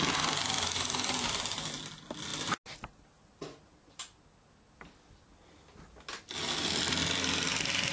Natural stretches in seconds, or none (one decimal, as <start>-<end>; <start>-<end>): 0.0-7.9